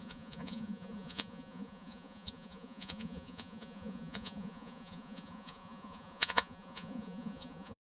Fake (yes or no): yes